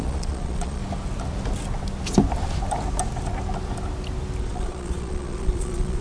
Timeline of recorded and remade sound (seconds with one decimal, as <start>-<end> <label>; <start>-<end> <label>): 0.0-0.8 remade; 0.8-4.4 recorded; 4.4-6.0 remade